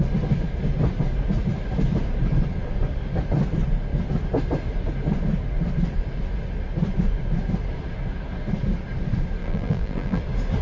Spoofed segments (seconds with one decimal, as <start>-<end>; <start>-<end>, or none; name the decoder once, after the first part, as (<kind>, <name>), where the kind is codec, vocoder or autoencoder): 9.4-10.2 (vocoder, BigVGAN v2)